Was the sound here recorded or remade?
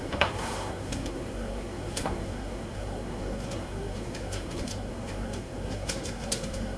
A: remade